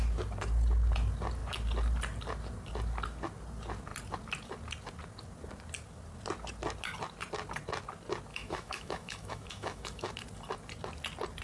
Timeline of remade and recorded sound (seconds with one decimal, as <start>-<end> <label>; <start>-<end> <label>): 0.0-8.3 recorded; 8.3-10.1 remade; 10.1-11.4 recorded